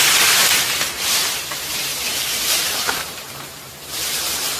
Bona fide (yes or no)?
no